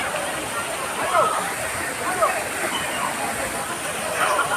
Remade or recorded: recorded